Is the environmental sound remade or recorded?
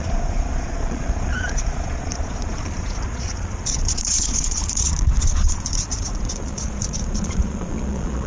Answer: remade